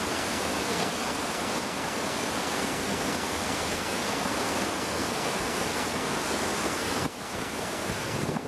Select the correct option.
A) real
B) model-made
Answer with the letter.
B